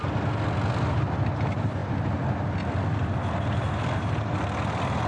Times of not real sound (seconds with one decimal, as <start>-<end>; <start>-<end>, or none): none